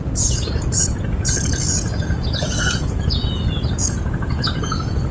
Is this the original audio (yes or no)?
no